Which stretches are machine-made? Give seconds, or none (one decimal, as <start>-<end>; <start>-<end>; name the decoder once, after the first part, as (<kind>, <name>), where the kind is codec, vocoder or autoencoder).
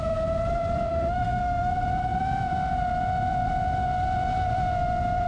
0.9-1.7 (autoencoder, DAC-VAE)